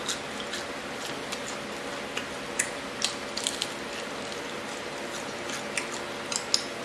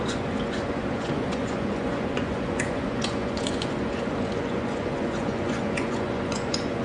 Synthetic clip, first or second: second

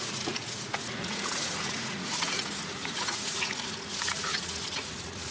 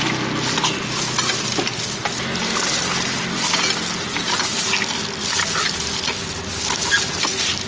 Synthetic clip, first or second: first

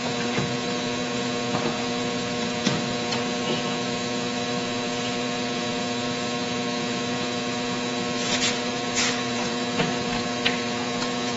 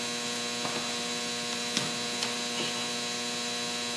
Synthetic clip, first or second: first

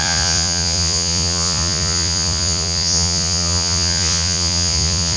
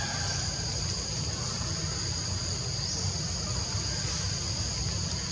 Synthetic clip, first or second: first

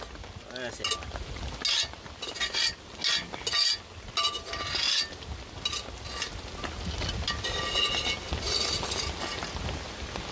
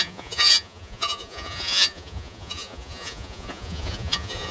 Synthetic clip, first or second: second